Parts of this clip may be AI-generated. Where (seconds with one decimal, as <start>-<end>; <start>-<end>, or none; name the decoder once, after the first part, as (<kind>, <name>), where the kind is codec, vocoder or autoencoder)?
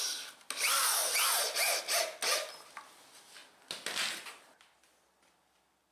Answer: none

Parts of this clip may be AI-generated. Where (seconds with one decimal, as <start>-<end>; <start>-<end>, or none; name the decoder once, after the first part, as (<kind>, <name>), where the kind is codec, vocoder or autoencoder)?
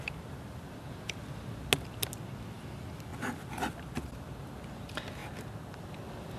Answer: none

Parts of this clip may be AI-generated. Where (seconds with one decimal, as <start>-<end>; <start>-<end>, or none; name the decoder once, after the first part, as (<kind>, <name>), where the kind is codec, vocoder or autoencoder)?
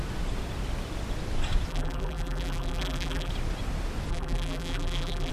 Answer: 1.7-3.3 (vocoder, BigVGAN v2); 4.1-5.3